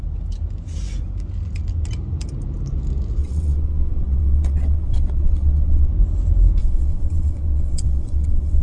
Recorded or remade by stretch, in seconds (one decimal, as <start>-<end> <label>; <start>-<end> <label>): 0.0-3.2 recorded; 3.2-5.9 remade; 5.9-6.6 recorded; 6.6-8.6 remade